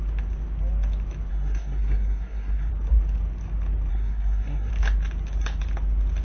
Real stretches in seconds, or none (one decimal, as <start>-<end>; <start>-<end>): 0.0-1.3; 2.7-3.9; 4.7-6.2